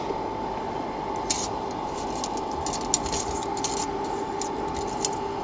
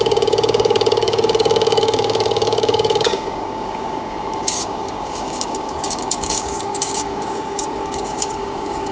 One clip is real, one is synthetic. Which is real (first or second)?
first